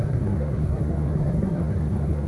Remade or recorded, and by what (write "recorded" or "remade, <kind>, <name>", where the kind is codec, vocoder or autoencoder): remade, codec, SNAC